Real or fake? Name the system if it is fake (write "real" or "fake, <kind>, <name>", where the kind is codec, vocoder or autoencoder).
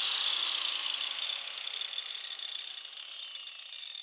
real